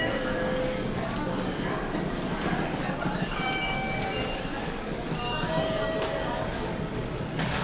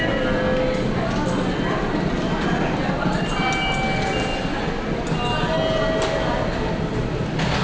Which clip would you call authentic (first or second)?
second